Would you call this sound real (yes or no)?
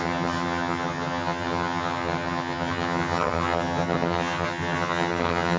no